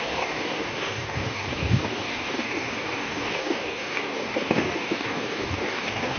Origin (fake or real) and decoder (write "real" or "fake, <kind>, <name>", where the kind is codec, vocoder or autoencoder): fake, codec, DAC